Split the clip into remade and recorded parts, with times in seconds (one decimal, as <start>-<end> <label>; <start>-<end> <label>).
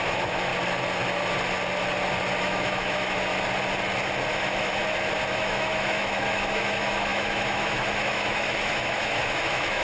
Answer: 0.0-0.5 remade; 0.5-2.4 recorded; 2.4-3.3 remade; 3.3-4.3 recorded; 4.3-4.8 remade; 4.8-5.3 recorded; 5.3-9.8 remade